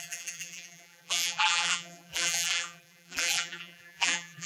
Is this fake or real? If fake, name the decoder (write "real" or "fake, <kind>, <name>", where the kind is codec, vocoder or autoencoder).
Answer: fake, vocoder, BigVGAN v2